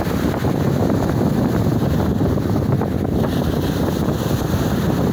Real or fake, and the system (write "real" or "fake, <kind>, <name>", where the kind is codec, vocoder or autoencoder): real